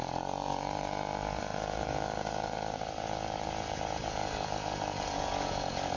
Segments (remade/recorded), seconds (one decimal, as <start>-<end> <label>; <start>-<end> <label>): 0.0-6.0 remade